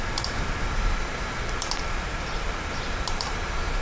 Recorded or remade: remade